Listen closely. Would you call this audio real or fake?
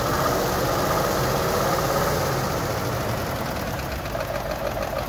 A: real